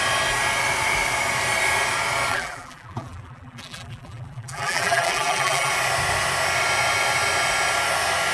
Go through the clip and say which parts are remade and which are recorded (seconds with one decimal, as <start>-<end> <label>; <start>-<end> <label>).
0.0-2.3 recorded; 2.3-5.7 remade; 5.7-8.3 recorded